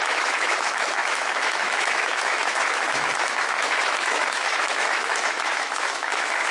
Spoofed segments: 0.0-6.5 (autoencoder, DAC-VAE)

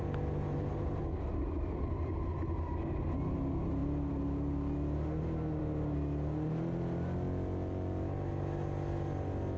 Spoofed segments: none